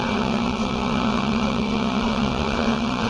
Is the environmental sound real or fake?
fake